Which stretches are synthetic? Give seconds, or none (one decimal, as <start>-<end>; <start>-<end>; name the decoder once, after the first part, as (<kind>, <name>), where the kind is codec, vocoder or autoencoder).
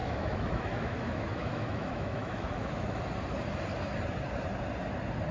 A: 0.0-3.0 (autoencoder, DAC-VAE)